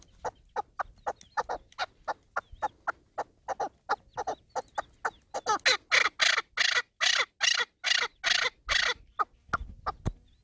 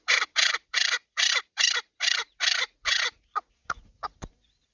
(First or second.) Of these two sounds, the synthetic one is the second